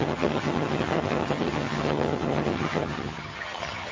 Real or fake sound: fake